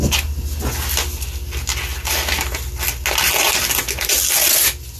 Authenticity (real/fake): real